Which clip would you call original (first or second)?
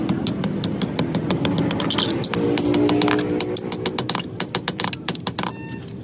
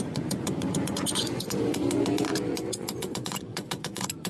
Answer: first